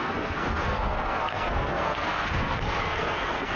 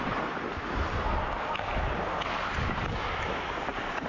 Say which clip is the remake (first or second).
first